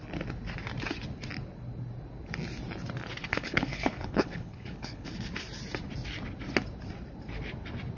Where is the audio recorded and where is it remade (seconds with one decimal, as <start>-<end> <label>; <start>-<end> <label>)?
0.0-3.2 recorded; 3.2-5.1 remade; 5.1-8.0 recorded